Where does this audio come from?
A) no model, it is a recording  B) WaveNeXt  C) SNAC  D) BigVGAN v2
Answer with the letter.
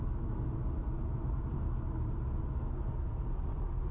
A